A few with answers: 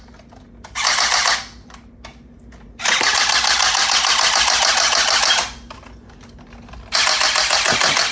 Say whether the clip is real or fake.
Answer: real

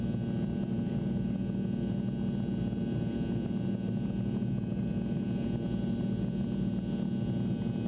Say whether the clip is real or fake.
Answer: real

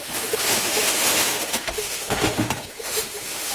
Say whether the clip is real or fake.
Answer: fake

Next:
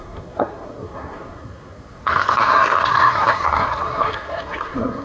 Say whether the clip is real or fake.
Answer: fake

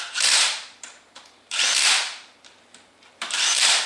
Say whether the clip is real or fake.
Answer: fake